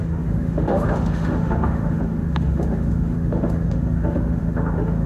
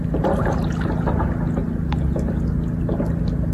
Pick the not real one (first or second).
first